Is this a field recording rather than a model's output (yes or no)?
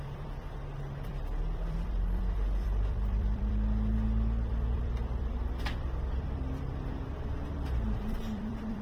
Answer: no